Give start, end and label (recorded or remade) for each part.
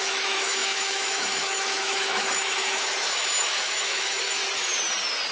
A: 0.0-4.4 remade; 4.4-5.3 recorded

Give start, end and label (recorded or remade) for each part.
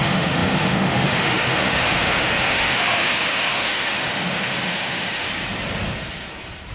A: 0.0-5.3 remade; 5.3-6.7 recorded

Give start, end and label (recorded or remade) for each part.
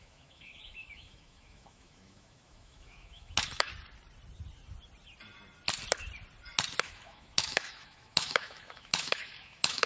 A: 0.0-3.7 remade; 3.7-6.8 recorded; 6.8-9.9 remade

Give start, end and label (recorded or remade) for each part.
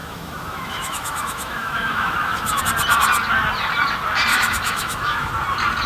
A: 0.0-2.6 remade; 2.6-4.3 recorded; 4.3-5.3 remade; 5.3-5.9 recorded